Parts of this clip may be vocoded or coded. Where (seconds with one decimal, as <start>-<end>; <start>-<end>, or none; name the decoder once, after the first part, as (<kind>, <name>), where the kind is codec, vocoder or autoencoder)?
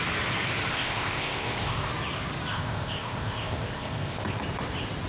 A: 0.7-1.9 (codec, ZipCodec); 2.5-4.4